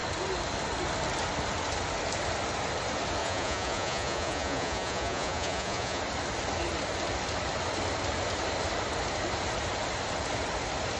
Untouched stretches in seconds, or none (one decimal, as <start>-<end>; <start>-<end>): 0.0-3.2; 6.0-11.0